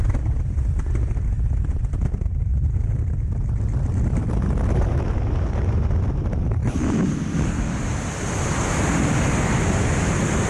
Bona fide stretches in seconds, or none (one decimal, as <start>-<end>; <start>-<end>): 6.6-10.0